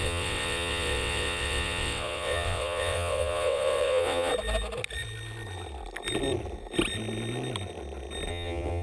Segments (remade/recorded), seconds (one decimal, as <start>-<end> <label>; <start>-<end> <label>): 0.0-4.3 remade; 4.3-8.3 recorded; 8.3-8.8 remade